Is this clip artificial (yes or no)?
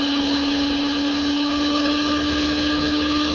yes